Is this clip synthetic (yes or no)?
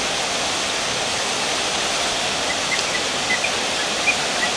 no